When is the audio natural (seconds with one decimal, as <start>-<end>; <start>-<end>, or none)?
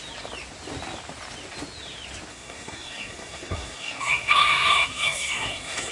0.0-2.3